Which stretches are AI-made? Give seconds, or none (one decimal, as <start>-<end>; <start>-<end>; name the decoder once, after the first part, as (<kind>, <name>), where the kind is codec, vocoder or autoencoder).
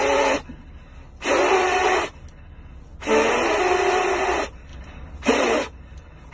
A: none